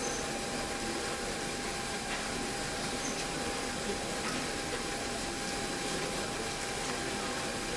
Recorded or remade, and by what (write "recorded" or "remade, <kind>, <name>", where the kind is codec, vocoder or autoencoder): recorded